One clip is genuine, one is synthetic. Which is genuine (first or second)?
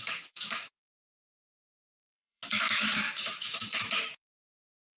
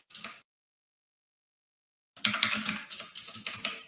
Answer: second